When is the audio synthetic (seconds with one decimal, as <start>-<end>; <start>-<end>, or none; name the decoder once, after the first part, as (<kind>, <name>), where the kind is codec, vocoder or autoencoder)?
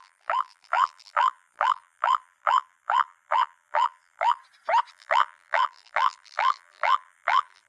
0.0-4.4 (vocoder, BigVGAN v2); 4.9-7.7